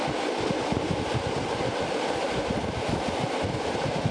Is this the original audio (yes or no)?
yes